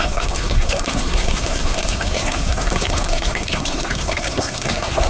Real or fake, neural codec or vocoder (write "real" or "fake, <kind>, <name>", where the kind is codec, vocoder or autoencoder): fake, codec, SNAC